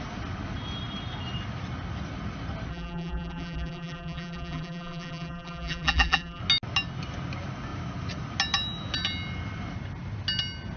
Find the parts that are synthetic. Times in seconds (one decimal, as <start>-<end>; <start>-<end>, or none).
2.7-6.4